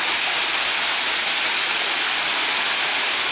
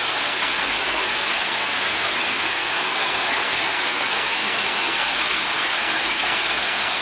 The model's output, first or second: second